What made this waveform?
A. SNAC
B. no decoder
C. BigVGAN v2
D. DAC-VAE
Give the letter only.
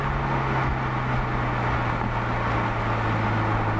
B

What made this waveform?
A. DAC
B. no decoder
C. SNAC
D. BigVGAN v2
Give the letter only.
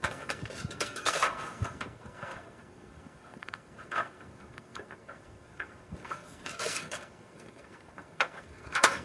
C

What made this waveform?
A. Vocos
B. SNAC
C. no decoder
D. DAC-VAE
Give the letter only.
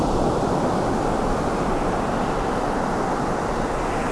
C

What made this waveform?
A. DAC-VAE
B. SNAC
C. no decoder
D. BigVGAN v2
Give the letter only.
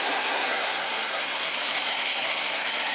B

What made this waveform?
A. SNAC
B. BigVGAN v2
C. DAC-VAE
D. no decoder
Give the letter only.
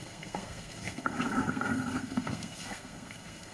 A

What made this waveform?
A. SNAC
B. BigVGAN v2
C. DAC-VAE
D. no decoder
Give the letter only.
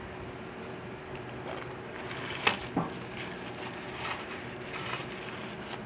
D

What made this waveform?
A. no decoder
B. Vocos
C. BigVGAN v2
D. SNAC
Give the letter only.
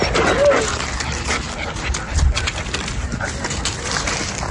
A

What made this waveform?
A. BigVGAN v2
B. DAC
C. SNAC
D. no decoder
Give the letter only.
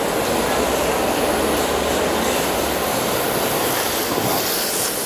D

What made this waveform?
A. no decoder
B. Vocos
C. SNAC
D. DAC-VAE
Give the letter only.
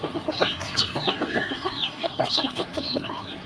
C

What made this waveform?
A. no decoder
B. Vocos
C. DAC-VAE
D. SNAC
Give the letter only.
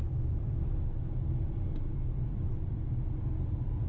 A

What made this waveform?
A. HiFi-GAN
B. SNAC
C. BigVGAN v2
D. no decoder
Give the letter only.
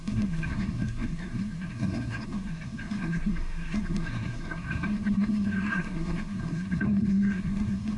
B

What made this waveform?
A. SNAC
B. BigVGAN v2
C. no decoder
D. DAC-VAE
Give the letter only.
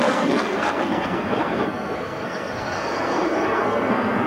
A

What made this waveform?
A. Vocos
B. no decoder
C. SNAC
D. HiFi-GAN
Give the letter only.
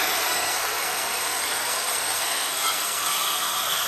C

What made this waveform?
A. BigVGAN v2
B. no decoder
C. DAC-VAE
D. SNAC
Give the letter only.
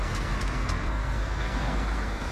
D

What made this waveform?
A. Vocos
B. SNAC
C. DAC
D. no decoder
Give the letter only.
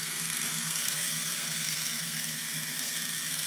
B